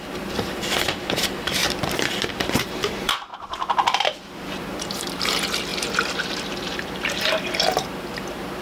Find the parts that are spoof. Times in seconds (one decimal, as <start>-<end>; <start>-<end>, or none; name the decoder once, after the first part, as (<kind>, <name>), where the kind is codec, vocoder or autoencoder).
0.0-1.6 (vocoder, BigVGAN v2); 2.4-3.3; 4.6-8.6